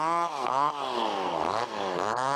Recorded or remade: remade